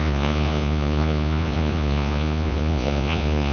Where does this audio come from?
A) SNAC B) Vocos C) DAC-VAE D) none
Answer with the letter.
B